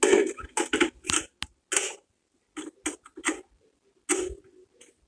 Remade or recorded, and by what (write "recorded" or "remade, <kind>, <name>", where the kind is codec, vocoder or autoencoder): recorded